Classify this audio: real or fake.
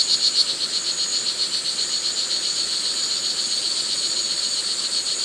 real